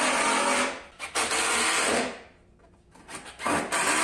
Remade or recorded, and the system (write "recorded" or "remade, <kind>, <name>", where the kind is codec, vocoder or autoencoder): recorded